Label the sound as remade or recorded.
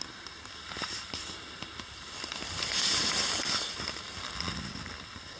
recorded